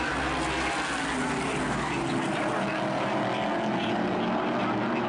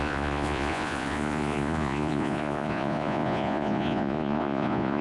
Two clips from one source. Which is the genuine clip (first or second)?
first